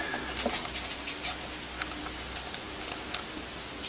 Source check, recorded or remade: recorded